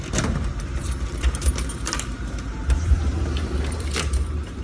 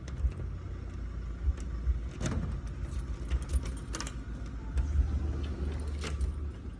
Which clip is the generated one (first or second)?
first